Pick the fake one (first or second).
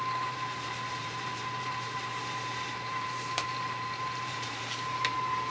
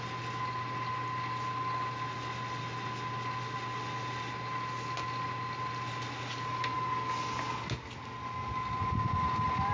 first